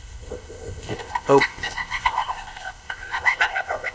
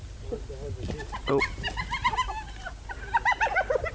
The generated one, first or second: first